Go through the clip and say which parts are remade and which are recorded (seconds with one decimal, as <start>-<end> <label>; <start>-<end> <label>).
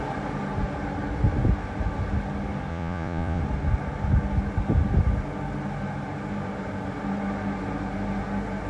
0.0-2.7 recorded; 2.7-3.4 remade; 3.4-8.7 recorded